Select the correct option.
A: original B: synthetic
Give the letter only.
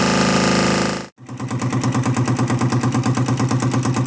A